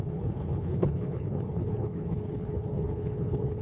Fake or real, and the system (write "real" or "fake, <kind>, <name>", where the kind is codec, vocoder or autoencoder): fake, codec, HILCodec